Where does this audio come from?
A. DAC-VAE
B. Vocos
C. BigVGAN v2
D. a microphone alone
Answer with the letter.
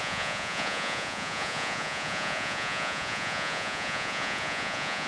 B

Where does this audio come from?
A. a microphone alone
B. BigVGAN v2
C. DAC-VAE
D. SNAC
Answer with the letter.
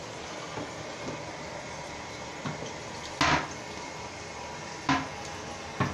A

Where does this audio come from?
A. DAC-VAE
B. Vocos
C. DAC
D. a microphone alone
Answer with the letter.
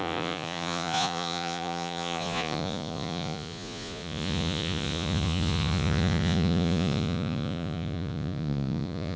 B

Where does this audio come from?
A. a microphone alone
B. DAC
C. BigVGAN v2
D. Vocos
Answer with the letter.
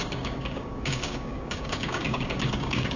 B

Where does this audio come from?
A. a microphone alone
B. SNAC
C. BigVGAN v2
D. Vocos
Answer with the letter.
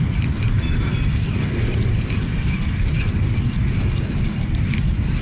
A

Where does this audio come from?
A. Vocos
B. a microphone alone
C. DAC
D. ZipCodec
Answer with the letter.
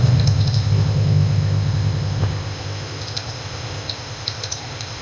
D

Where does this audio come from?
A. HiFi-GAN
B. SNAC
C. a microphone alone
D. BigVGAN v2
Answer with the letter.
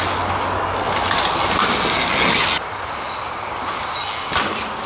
C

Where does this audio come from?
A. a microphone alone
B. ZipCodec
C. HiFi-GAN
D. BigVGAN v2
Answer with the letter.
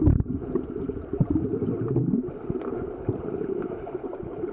D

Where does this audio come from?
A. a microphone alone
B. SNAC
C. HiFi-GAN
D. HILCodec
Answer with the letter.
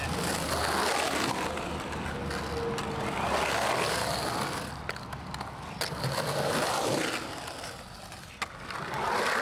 A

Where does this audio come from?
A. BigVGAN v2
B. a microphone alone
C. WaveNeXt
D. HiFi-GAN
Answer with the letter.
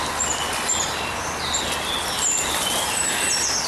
B